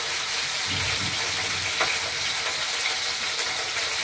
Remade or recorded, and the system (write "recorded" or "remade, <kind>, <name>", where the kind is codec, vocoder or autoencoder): recorded